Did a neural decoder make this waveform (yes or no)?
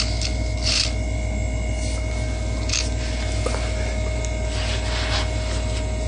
no